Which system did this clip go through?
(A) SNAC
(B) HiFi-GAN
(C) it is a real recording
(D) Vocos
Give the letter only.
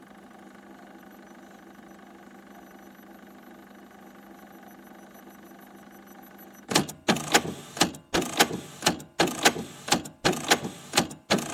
C